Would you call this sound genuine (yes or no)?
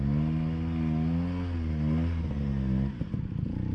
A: yes